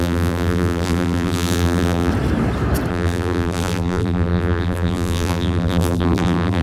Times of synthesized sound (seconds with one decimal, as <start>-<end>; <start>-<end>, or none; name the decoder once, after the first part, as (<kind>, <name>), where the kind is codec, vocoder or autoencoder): 0.0-2.1 (vocoder, BigVGAN v2); 2.9-6.6